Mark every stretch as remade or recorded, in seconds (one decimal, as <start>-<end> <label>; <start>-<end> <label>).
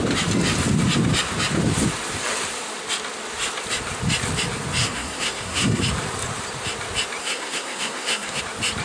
0.0-4.8 recorded; 4.8-5.8 remade; 5.8-7.2 recorded; 7.2-8.4 remade; 8.4-8.8 recorded